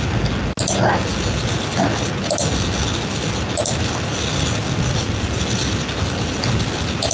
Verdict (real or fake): real